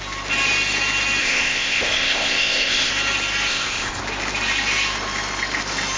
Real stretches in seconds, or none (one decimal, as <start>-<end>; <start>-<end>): 0.0-1.2; 2.9-3.5; 4.0-6.0